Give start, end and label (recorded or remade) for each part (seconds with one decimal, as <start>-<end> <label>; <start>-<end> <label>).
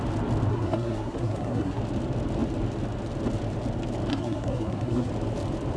0.0-0.5 recorded; 0.5-1.8 remade; 1.8-4.1 recorded; 4.1-5.1 remade; 5.1-5.8 recorded